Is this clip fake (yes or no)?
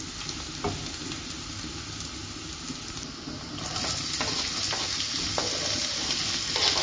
no